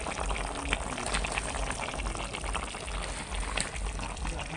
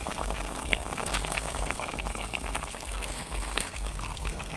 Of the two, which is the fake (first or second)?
second